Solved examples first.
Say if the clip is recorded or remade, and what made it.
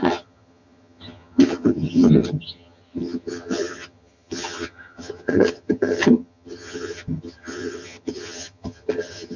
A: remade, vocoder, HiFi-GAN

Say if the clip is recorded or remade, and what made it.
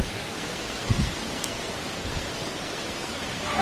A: remade, codec, SNAC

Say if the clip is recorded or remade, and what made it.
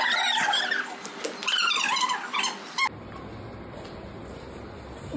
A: recorded